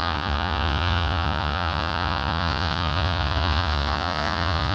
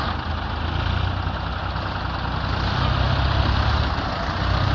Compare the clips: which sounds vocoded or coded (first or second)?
first